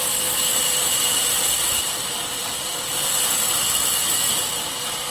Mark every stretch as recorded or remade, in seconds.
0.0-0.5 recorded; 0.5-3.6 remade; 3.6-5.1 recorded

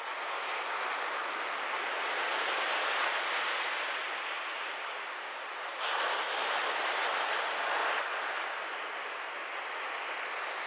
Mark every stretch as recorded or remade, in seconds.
0.0-10.7 recorded

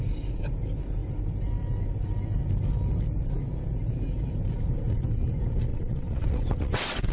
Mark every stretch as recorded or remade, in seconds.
0.0-5.7 recorded; 5.7-7.1 remade

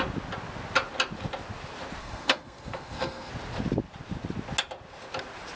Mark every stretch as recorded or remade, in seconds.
0.0-2.0 recorded; 2.0-3.3 remade; 3.3-5.6 recorded

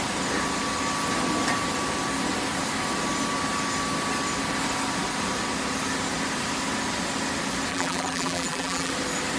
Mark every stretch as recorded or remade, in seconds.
0.0-7.7 recorded; 7.7-8.9 remade; 8.9-9.4 recorded

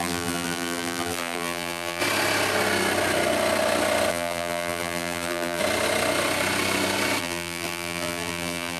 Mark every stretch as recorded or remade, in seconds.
0.0-2.0 remade; 2.0-4.1 recorded; 4.1-5.6 remade; 5.6-7.2 recorded; 7.2-8.8 remade

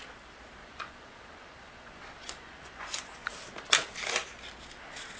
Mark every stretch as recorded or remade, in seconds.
0.0-0.6 recorded; 0.6-3.3 remade; 3.3-5.2 recorded